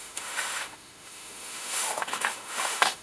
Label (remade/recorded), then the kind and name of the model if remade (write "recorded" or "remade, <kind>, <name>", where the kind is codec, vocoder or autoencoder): remade, autoencoder, DAC-VAE